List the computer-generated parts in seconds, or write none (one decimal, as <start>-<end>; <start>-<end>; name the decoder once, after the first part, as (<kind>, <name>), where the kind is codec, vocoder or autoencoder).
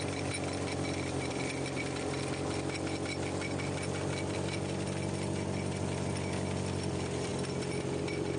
none